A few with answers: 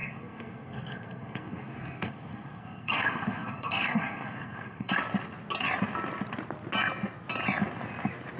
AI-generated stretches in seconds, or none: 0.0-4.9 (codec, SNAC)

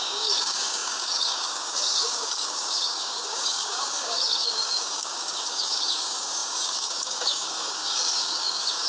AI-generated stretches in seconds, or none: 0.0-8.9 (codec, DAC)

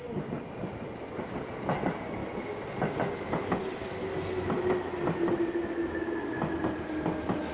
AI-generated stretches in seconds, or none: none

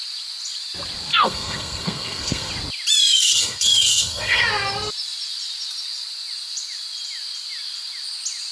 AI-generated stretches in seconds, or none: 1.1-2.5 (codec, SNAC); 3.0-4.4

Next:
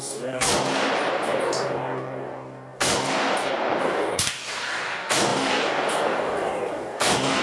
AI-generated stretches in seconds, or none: 0.0-0.5 (codec, DAC); 1.1-7.4

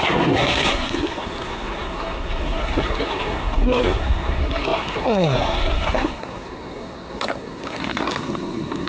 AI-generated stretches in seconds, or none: 0.0-8.9 (codec, SNAC)

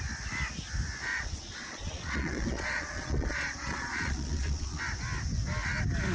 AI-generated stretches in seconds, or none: 1.1-4.8 (vocoder, Vocos)